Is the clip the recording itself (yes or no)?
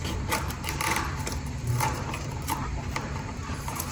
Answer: no